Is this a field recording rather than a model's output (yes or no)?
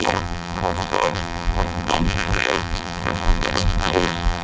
no